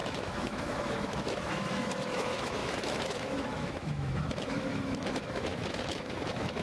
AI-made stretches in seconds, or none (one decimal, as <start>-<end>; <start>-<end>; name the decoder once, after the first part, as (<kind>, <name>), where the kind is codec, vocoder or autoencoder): 0.0-6.6 (autoencoder, DAC-VAE)